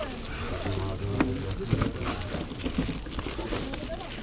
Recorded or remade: recorded